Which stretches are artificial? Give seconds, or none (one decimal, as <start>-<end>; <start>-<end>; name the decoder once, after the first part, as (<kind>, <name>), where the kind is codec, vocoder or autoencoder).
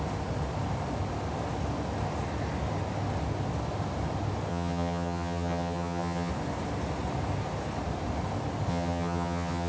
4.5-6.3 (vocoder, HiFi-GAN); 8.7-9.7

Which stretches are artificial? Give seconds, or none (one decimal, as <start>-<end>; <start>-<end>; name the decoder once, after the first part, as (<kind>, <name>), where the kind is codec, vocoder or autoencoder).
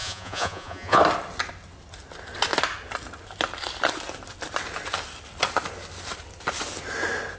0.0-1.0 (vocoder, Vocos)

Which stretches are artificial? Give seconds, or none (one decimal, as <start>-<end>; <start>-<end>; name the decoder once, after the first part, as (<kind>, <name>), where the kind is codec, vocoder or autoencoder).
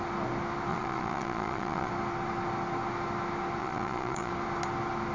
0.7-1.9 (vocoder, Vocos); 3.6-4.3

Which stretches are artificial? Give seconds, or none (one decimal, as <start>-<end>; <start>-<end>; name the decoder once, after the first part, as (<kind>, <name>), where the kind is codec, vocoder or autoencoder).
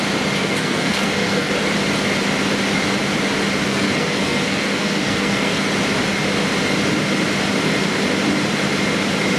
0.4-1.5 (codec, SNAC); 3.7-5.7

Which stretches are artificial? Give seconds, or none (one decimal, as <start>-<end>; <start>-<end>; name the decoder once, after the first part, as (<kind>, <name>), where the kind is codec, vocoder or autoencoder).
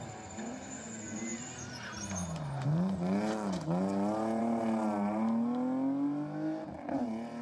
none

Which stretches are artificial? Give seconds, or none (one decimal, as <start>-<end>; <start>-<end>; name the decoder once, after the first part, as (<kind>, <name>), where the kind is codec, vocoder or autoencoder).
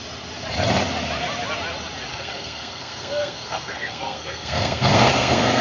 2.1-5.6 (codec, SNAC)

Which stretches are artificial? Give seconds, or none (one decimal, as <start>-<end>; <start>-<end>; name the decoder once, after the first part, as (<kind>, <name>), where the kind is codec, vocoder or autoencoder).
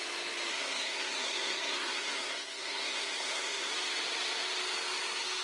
0.5-3.7 (codec, SNAC)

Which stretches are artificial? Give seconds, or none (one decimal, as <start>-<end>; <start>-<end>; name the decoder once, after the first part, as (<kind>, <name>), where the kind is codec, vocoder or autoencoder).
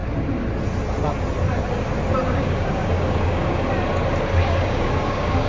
2.2-3.6 (codec, DAC); 4.4-5.5